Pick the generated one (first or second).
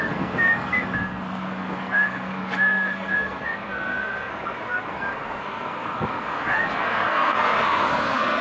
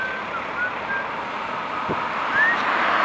first